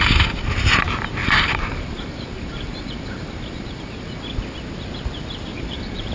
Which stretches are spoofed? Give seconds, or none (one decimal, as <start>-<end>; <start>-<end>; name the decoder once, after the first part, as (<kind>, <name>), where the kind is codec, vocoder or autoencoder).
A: 1.2-4.2 (vocoder, BigVGAN v2); 5.5-6.1